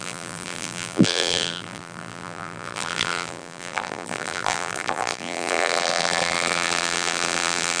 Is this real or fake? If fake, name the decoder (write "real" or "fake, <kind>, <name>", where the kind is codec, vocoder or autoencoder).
fake, vocoder, BigVGAN v2